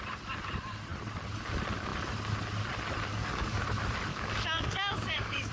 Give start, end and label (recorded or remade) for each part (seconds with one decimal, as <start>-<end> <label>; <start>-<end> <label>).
0.0-3.1 recorded; 3.1-3.6 remade; 3.6-4.1 recorded; 4.1-5.5 remade